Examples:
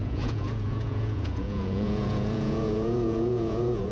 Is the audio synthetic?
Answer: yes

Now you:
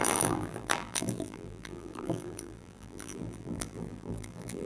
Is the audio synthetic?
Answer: yes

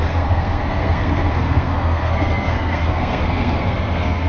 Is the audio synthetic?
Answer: yes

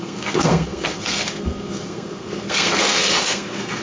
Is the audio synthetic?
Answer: yes